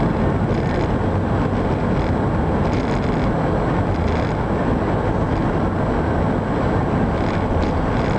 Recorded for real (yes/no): yes